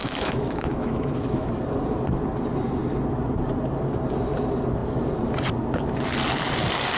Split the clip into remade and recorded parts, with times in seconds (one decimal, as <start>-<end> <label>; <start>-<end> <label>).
0.0-1.5 remade; 1.5-7.0 recorded

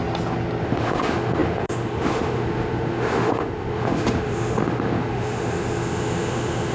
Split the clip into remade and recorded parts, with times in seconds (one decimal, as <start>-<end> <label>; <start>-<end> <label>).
0.0-0.6 recorded; 0.6-6.7 remade

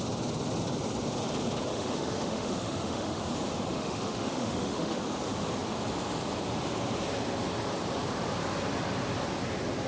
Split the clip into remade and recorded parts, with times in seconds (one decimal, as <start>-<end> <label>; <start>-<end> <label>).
0.0-1.7 recorded; 1.7-3.2 remade; 3.2-3.7 recorded; 3.7-5.0 remade; 5.0-9.9 recorded

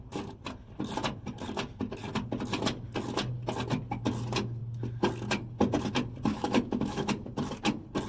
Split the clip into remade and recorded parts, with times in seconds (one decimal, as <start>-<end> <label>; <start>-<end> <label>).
0.0-6.3 recorded; 6.3-7.1 remade; 7.1-8.1 recorded